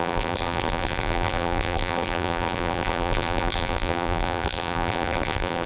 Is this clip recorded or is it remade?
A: remade